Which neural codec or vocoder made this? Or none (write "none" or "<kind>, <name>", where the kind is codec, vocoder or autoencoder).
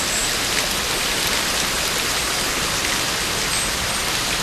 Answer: none